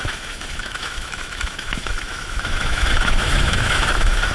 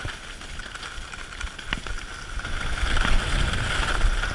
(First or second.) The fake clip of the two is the first